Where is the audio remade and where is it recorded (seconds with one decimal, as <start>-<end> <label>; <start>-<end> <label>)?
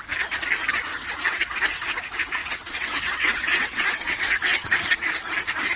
0.0-0.9 recorded; 0.9-1.5 remade; 1.5-2.4 recorded; 2.4-4.7 remade; 4.7-5.8 recorded